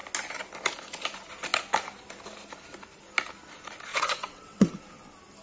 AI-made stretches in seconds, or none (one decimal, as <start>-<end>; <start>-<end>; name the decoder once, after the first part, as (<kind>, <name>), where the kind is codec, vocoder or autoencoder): 3.9-4.7 (vocoder, WaveNeXt)